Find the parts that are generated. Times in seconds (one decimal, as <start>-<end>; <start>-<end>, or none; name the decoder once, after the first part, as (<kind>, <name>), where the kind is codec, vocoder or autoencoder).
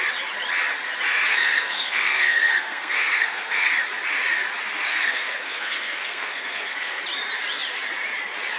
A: 1.3-3.7 (codec, SNAC); 4.9-7.0